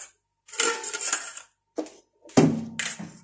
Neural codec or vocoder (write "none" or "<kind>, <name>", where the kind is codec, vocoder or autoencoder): none